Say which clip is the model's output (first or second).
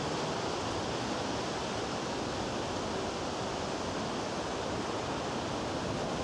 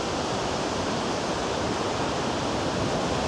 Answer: second